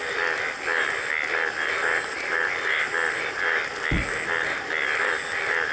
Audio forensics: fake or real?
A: real